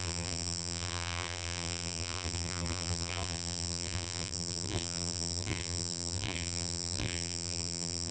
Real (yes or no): no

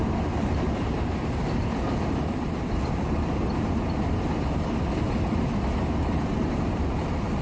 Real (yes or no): no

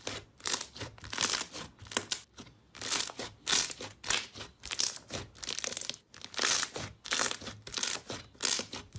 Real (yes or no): yes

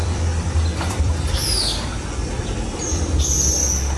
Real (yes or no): no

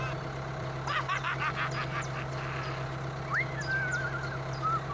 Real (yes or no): yes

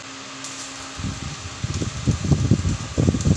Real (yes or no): yes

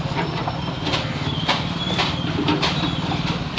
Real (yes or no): no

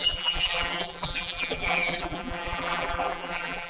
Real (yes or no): no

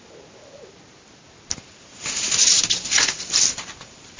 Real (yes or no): yes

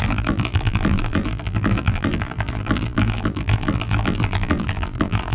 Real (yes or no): no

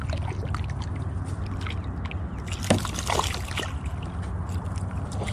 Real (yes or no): yes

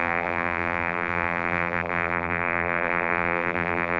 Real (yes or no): no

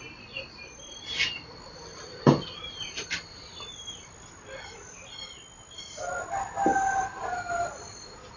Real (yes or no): yes